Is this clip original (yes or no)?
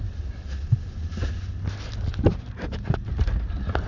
yes